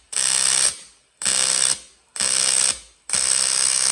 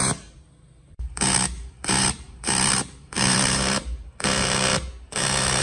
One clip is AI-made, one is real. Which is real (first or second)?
first